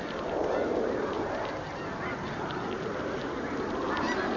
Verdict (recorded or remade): recorded